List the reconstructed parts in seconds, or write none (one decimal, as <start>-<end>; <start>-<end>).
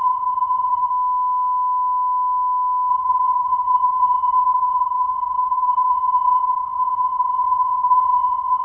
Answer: 0.0-0.9; 2.9-8.6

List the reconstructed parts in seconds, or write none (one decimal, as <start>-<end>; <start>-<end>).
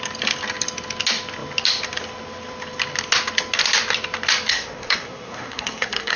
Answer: 4.5-6.2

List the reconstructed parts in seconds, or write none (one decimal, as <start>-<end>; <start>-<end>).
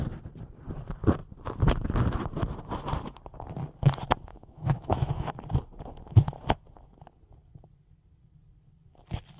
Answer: 4.3-5.3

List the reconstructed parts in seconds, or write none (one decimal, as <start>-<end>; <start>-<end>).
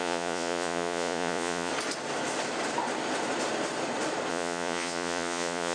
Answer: 0.0-1.7; 4.3-5.7